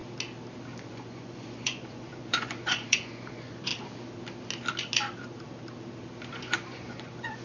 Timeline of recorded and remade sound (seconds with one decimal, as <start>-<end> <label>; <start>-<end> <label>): 0.0-0.9 recorded; 0.9-3.7 remade; 3.7-6.3 recorded; 6.3-7.4 remade